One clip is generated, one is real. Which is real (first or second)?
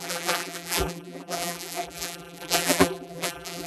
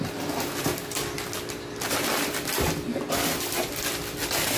second